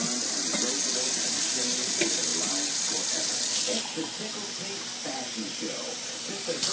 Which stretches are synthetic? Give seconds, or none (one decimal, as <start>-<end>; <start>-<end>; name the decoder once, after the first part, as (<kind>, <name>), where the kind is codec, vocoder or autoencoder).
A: none